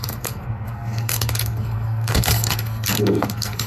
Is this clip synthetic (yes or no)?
yes